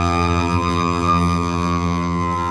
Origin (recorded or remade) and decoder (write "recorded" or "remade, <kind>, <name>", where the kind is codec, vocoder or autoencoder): remade, vocoder, BigVGAN v2